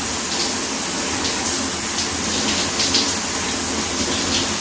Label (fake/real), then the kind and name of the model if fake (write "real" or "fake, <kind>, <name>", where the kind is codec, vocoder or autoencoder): real